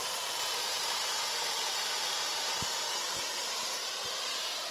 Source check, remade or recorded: remade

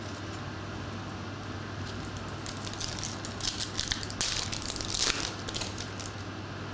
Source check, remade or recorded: recorded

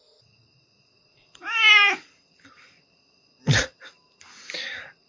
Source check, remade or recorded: recorded